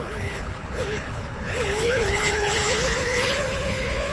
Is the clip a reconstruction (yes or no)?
yes